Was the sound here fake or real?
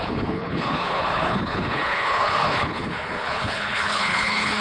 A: fake